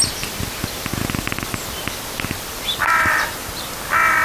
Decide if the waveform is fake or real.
real